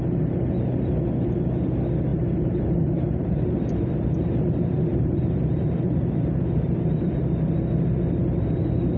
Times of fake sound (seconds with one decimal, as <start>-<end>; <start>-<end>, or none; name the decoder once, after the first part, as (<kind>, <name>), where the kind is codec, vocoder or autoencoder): 2.1-7.2 (vocoder, BigVGAN v2)